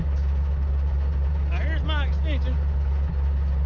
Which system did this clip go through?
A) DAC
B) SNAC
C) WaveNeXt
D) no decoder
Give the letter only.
D